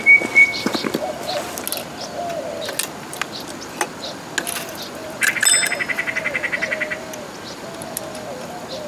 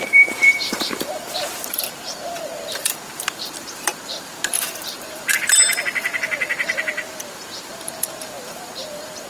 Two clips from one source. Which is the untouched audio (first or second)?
first